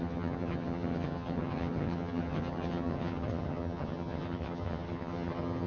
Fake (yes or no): yes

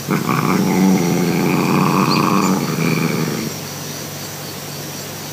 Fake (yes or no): no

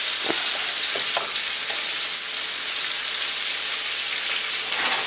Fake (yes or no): no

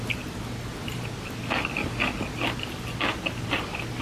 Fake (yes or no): no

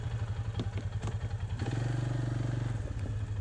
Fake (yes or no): no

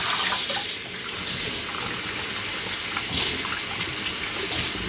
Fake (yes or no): no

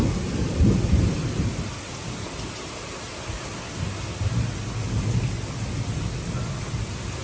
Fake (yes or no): no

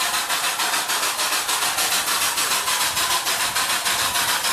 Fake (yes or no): no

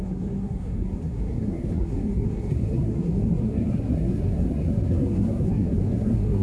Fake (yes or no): yes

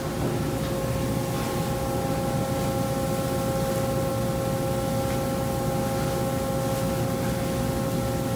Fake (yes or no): no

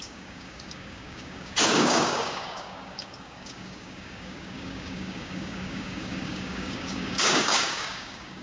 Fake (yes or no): yes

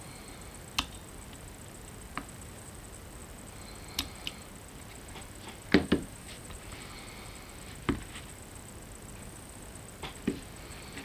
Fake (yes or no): no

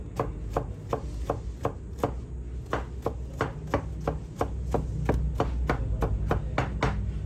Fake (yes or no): no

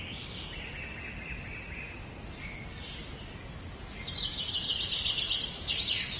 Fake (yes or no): no